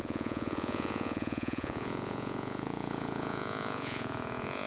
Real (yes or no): no